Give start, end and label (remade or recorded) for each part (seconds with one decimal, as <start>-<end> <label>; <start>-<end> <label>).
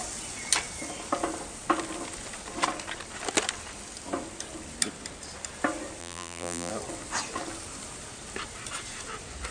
0.0-6.0 recorded; 6.0-6.7 remade; 6.7-9.5 recorded